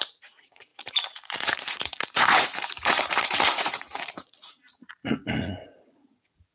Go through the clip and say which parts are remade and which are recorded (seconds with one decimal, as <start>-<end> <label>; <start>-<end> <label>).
0.0-6.5 remade